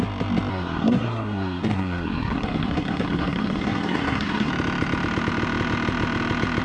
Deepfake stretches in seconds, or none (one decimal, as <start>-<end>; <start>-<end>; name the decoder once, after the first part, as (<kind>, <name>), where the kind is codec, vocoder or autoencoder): 0.5-4.5 (codec, SNAC)